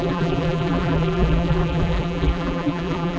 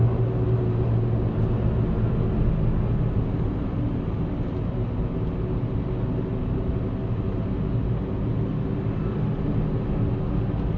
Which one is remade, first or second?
first